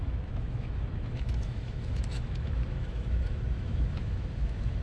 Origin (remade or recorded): remade